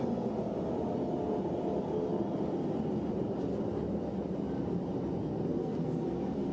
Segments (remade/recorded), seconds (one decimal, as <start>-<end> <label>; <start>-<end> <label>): 0.0-5.6 recorded; 5.6-6.5 remade